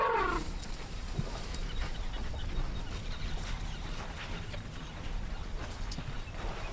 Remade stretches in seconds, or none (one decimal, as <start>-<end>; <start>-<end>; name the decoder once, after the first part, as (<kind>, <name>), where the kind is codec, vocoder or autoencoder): none